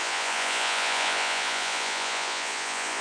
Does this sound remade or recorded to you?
remade